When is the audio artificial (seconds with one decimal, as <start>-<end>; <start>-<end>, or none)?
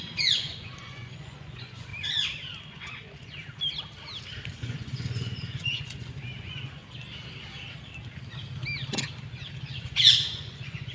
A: 0.0-1.9; 2.6-3.4; 4.5-6.8; 9.6-10.9